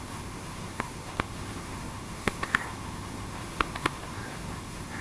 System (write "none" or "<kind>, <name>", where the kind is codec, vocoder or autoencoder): codec, SNAC